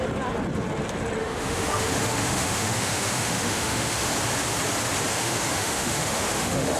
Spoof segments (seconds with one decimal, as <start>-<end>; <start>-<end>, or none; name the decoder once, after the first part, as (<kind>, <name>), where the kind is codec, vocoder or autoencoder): 1.2-4.1 (autoencoder, DAC-VAE); 5.1-6.8